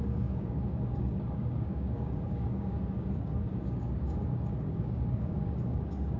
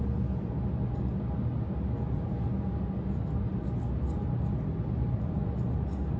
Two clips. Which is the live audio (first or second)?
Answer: second